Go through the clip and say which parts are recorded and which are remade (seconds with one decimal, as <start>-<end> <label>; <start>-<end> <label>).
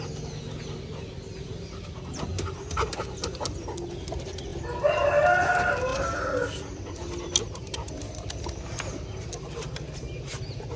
0.0-5.9 recorded; 5.9-7.4 remade; 7.4-10.8 recorded